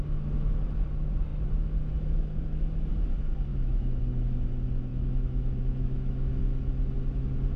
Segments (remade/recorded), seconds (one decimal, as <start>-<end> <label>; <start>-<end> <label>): 0.0-3.5 recorded; 3.5-4.0 remade; 4.0-4.9 recorded; 4.9-6.4 remade; 6.4-7.6 recorded